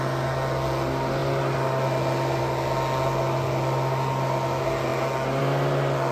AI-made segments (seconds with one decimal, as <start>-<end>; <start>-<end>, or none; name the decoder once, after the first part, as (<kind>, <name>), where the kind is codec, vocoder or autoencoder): none